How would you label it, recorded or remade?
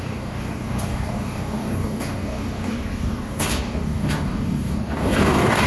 remade